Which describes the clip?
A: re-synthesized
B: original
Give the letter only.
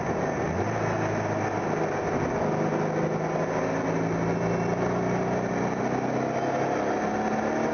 B